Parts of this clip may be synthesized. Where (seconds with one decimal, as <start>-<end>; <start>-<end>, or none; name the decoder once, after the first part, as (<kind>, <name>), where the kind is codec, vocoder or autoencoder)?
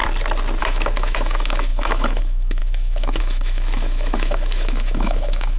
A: 0.6-5.6 (autoencoder, DAC-VAE)